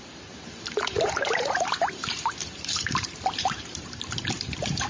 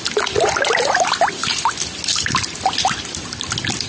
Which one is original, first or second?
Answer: second